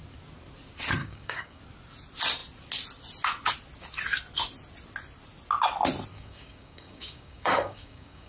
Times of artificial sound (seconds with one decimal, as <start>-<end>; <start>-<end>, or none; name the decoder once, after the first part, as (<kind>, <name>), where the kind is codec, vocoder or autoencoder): 1.0-1.6 (codec, DAC); 6.1-8.3